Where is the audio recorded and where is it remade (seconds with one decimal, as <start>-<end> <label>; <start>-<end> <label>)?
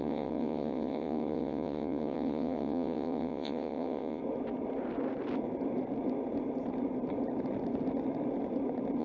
0.0-4.2 remade; 4.2-9.0 recorded